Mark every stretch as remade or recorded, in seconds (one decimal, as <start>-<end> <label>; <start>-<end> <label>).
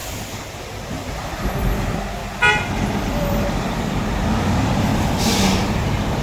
0.0-2.2 remade; 2.2-2.9 recorded; 2.9-4.9 remade; 4.9-5.7 recorded; 5.7-6.2 remade